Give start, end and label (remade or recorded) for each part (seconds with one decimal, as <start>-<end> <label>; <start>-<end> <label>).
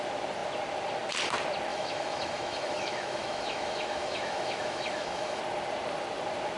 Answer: 0.0-1.7 recorded; 1.7-5.4 remade; 5.4-6.6 recorded